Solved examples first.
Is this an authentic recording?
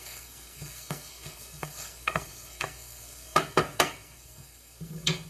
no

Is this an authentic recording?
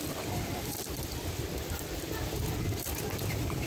no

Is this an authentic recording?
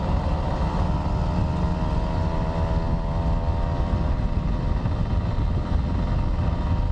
yes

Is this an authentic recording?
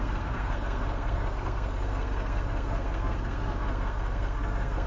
no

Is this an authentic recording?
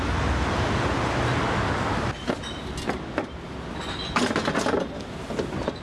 yes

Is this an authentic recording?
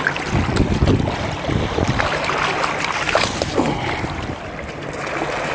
yes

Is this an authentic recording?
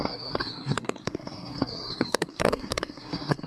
no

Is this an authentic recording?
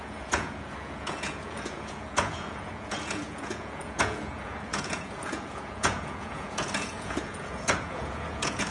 no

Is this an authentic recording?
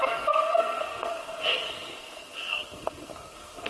no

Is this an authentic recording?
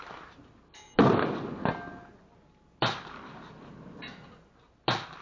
yes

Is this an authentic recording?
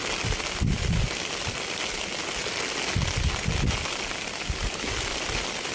yes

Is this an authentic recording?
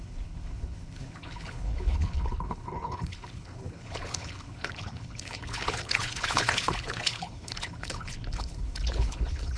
no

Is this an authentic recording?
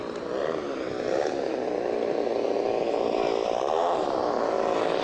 yes